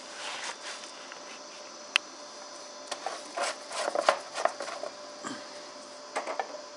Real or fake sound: real